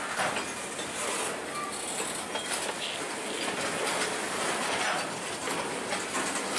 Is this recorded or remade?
recorded